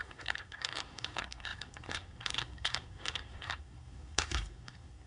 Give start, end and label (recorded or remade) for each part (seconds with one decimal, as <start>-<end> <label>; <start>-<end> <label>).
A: 0.0-5.1 remade

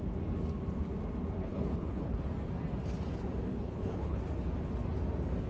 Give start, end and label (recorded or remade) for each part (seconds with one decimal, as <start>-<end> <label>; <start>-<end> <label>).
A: 0.0-1.4 recorded; 1.4-2.2 remade; 2.2-3.5 recorded; 3.5-4.2 remade; 4.2-5.5 recorded

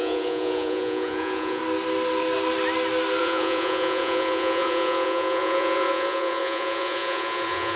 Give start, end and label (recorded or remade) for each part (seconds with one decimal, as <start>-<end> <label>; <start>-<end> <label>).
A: 0.0-1.6 remade; 1.6-3.2 recorded; 3.2-7.8 remade